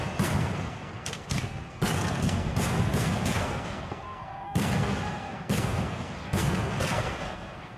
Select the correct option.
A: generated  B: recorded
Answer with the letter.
A